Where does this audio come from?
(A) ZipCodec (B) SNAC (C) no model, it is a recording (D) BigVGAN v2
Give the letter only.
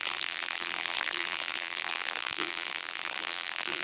D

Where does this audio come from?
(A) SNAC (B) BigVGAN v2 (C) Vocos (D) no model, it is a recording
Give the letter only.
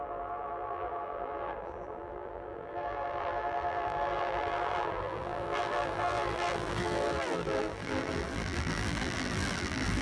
B